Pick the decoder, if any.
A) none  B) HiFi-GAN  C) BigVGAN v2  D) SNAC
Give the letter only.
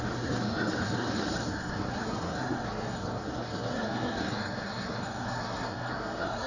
D